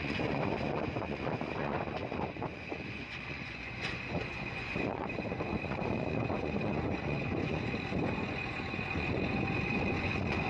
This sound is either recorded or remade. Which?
remade